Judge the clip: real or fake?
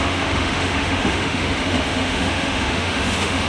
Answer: fake